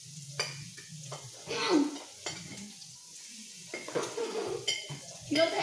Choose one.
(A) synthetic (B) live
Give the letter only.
A